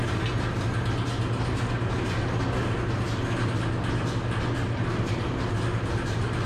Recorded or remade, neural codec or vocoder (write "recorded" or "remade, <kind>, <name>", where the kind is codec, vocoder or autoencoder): recorded